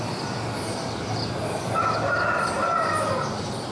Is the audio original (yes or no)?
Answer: no